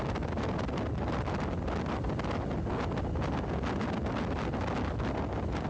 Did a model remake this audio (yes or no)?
no